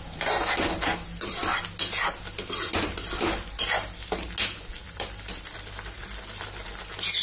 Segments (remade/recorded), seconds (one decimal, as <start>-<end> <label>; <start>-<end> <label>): 0.0-4.8 recorded; 4.8-6.7 remade; 6.7-7.2 recorded